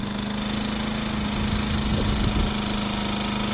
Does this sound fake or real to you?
real